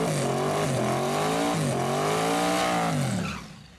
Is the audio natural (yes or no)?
yes